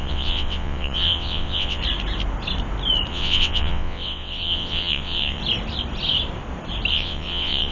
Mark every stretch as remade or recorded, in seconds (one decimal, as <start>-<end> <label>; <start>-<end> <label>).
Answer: 0.0-1.8 remade; 1.8-3.1 recorded; 3.1-5.4 remade; 5.4-6.9 recorded; 6.9-7.7 remade